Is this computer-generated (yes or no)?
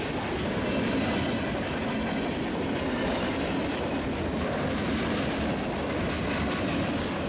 no